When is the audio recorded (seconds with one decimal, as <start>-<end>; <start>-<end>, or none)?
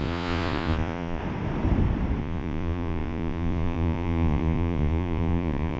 1.2-2.2